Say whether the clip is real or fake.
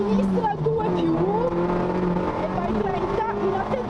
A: real